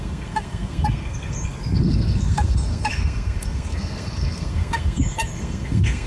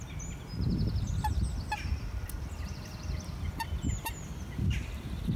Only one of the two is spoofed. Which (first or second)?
first